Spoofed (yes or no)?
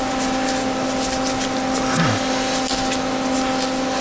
no